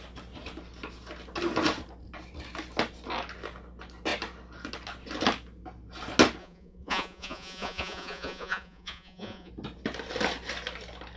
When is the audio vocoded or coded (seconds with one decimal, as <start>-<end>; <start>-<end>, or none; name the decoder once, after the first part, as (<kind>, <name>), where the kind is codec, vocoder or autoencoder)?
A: 6.4-9.5 (vocoder, Vocos)